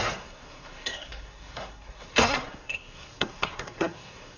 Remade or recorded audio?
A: remade